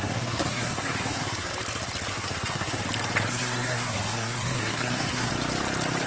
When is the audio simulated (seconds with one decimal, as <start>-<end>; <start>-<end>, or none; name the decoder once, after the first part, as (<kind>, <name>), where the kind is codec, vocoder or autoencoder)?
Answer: 0.0-1.5 (codec, SNAC); 2.1-2.8; 3.3-5.3